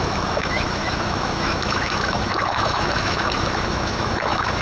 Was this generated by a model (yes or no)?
yes